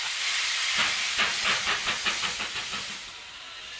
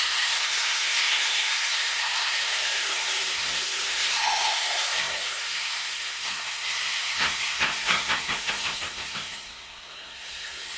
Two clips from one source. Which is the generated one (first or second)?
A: second